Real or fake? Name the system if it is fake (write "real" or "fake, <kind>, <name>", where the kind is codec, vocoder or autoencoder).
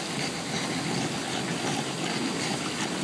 real